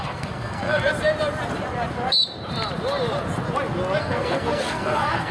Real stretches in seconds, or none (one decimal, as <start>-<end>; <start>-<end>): 0.9-4.0